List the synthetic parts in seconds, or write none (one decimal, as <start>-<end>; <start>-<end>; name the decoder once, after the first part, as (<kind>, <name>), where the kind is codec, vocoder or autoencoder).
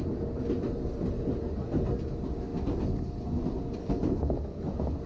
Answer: 3.8-4.6 (codec, SNAC)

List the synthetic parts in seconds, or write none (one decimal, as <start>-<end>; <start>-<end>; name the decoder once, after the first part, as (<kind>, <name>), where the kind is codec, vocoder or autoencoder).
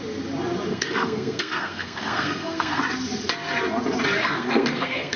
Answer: 0.7-2.8 (codec, SNAC); 4.2-5.2